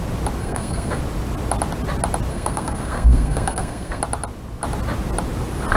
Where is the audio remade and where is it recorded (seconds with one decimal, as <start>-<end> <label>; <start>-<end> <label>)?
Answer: 0.0-0.4 recorded; 0.4-1.0 remade; 1.0-2.3 recorded; 2.3-4.0 remade; 4.0-5.8 recorded

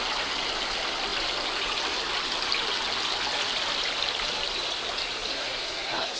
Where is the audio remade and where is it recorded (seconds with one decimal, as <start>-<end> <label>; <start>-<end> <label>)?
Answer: 0.0-5.3 recorded; 5.3-6.2 remade

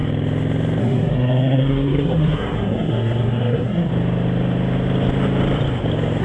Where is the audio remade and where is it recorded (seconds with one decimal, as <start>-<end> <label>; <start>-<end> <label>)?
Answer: 0.0-0.8 recorded; 0.8-3.9 remade; 3.9-6.2 recorded

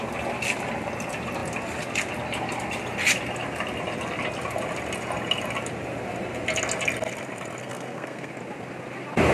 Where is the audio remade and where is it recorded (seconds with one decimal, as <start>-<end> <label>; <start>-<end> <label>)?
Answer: 0.0-7.6 recorded; 7.6-8.3 remade; 8.3-9.3 recorded

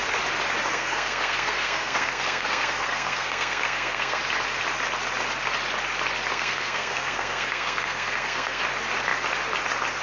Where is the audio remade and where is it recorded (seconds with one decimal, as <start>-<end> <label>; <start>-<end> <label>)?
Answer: 0.0-0.7 recorded; 0.7-4.2 remade; 4.2-6.3 recorded; 6.3-8.6 remade; 8.6-10.0 recorded

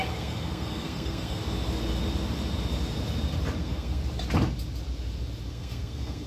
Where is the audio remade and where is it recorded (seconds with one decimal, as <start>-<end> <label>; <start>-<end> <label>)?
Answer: 0.0-1.4 remade; 1.4-3.6 recorded; 3.6-4.0 remade; 4.0-5.5 recorded; 5.5-6.3 remade

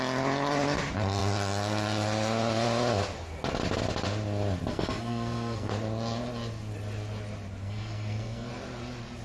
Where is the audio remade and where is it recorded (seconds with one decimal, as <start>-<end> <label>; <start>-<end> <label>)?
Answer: 0.0-4.7 recorded; 4.7-5.7 remade; 5.7-7.6 recorded; 7.6-8.5 remade; 8.5-9.2 recorded